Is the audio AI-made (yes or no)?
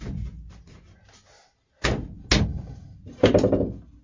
no